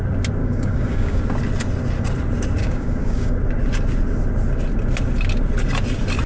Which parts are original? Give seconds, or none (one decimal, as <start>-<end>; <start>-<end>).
0.0-0.4; 1.2-2.6; 3.4-6.3

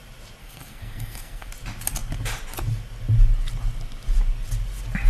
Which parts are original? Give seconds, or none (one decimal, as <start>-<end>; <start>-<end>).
0.0-0.4; 1.5-5.1

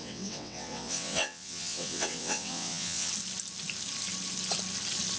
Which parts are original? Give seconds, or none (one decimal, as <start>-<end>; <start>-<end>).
3.1-5.2

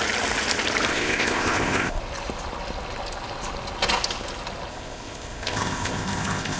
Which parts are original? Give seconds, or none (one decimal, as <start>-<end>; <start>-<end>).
0.0-0.9; 2.0-4.7

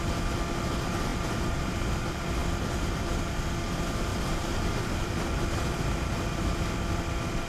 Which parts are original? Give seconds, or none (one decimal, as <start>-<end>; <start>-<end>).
0.0-1.1; 1.9-4.1; 4.7-7.5

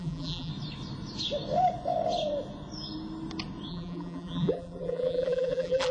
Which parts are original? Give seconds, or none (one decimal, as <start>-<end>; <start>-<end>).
0.5-3.7